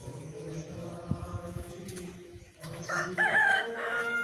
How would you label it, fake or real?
fake